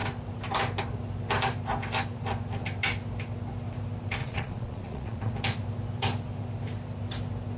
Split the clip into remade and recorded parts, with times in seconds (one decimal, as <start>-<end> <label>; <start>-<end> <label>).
0.0-4.2 recorded; 4.2-5.3 remade; 5.3-7.6 recorded